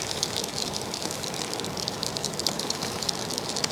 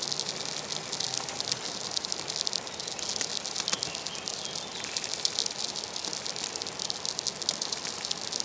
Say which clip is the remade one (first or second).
first